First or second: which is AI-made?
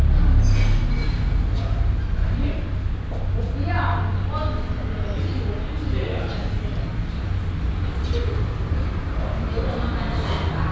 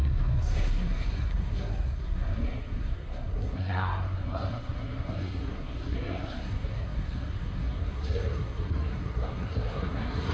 second